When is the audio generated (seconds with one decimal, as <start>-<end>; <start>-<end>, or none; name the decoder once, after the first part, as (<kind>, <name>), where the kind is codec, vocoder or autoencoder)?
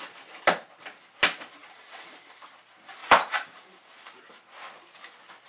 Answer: 1.6-2.5 (vocoder, BigVGAN v2); 3.0-4.2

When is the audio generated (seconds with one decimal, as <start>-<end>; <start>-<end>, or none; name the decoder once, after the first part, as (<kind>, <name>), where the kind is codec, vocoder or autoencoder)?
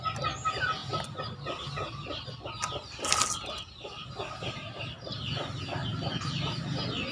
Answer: none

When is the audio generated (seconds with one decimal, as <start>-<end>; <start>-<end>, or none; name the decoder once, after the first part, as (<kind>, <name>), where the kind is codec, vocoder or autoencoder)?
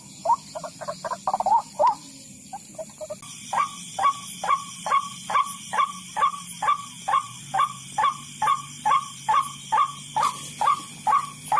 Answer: none